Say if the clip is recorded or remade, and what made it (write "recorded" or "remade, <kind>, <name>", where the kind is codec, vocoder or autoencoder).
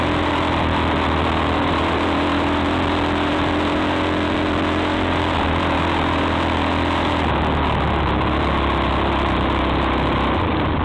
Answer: recorded